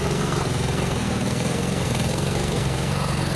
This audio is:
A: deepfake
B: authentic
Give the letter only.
A